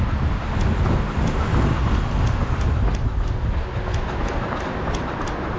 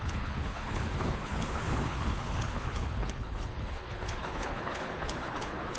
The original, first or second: first